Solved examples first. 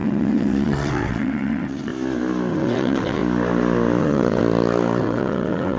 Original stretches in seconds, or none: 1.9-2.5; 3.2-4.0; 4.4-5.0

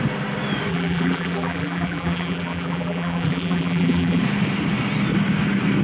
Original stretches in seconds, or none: 0.0-0.7; 4.2-5.8